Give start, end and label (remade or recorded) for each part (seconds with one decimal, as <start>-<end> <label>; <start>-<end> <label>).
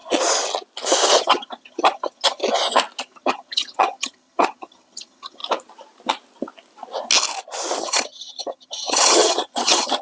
0.0-1.2 recorded; 1.2-2.4 remade; 2.4-3.0 recorded; 3.0-5.4 remade; 5.4-7.8 recorded; 7.8-10.0 remade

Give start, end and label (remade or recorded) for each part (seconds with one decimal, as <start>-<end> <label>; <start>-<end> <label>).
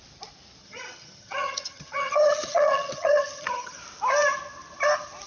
0.0-0.6 recorded; 0.6-3.8 remade; 3.8-5.3 recorded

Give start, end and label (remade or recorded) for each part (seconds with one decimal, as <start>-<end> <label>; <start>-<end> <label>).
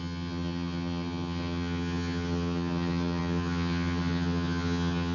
0.0-5.1 remade